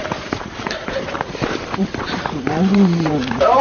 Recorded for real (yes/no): no